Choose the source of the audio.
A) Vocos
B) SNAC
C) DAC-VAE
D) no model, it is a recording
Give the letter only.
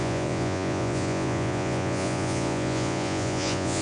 A